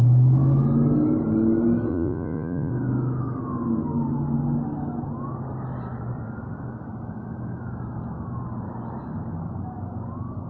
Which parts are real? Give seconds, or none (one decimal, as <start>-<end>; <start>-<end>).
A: 0.0-1.9; 2.7-10.5

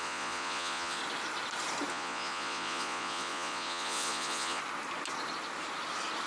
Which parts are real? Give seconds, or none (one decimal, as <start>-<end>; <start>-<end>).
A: 1.0-1.9; 4.6-6.3

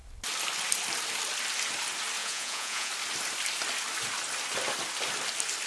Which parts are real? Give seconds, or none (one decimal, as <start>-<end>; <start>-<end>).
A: 0.0-2.2; 2.9-5.7

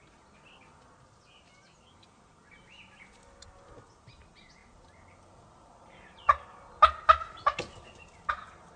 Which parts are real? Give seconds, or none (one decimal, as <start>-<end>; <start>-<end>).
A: 0.0-8.8

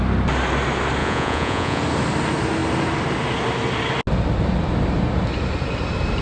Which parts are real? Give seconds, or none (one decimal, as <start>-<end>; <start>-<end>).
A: 0.0-1.0; 1.8-6.2

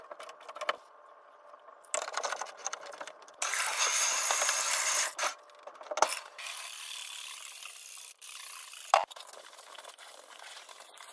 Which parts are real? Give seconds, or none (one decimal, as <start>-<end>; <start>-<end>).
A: 0.0-11.1